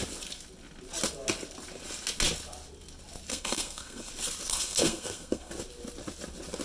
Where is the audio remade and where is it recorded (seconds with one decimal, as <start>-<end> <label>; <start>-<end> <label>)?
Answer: 0.0-3.3 recorded; 3.3-4.1 remade; 4.1-4.5 recorded; 4.5-5.5 remade; 5.5-6.6 recorded